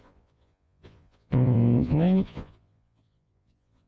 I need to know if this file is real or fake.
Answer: fake